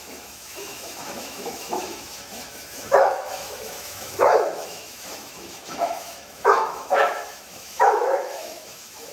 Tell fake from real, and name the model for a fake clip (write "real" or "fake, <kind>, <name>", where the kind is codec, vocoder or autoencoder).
fake, autoencoder, DAC-VAE